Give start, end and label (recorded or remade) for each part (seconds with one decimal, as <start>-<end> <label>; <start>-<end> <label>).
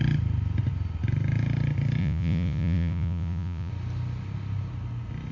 0.0-2.0 recorded; 2.0-3.7 remade; 3.7-5.3 recorded